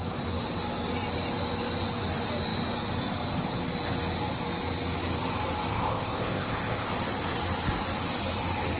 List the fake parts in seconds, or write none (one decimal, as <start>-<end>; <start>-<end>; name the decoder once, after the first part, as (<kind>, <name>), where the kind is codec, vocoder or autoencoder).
5.7-6.9 (codec, ZipCodec)